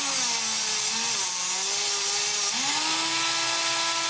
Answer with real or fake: real